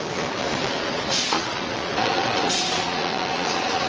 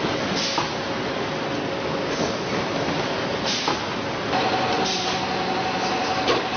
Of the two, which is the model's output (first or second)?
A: first